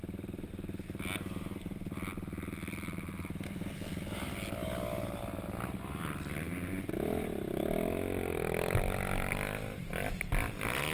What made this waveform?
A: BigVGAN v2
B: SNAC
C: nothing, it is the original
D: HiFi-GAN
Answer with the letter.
C